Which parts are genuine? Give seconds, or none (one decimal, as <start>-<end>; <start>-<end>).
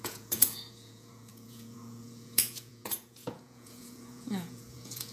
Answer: none